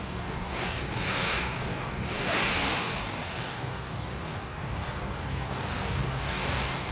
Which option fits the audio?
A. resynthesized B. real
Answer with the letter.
A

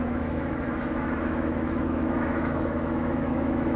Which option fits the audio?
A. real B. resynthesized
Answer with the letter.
B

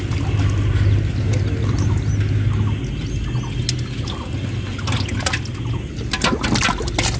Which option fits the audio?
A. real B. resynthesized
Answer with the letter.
A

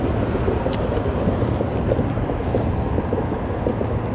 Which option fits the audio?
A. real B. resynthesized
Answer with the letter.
A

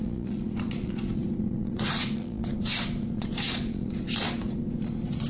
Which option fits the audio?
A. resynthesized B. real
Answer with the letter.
A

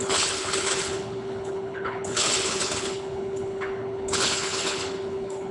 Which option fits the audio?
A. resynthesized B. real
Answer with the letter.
A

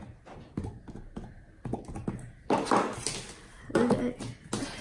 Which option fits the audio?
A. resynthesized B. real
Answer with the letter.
B